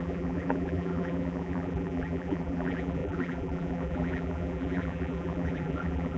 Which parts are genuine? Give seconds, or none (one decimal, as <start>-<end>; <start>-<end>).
none